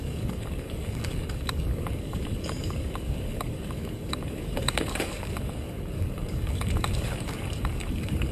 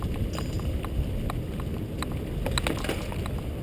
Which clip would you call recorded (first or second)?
second